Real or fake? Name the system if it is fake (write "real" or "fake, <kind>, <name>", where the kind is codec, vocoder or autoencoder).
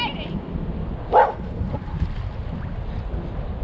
real